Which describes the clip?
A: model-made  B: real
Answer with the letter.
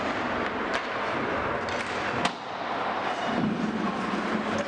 B